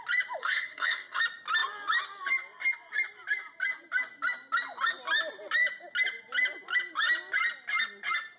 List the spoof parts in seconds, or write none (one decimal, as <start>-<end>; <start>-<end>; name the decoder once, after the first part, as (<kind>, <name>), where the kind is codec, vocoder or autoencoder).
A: 0.4-1.2 (codec, SNAC)

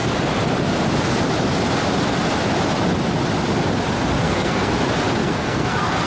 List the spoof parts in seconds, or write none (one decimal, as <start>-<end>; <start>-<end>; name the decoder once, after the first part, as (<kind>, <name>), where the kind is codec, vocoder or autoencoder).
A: 4.2-4.7 (codec, SNAC); 5.2-6.1

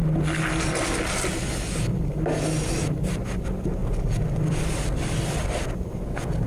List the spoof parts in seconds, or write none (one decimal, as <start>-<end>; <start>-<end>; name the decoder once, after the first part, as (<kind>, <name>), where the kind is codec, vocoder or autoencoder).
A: 3.8-6.0 (vocoder, BigVGAN v2)

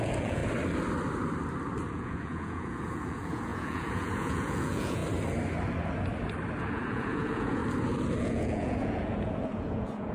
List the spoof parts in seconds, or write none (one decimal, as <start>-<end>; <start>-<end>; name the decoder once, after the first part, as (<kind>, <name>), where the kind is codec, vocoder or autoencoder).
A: 0.0-0.4 (vocoder, Vocos); 1.9-5.0; 6.6-7.6; 8.2-10.1